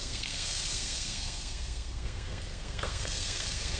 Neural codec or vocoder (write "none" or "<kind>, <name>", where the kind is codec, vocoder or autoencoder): codec, SNAC